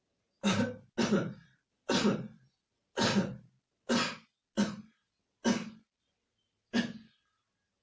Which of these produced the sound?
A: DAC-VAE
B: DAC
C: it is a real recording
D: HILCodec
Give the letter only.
C